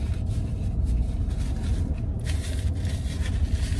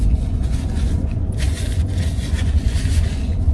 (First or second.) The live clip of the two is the first